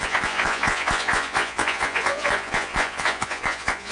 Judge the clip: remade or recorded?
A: remade